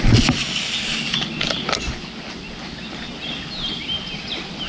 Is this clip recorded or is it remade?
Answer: recorded